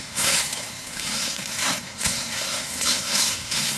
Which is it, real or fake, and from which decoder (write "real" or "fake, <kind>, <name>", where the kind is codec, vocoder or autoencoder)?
fake, codec, SNAC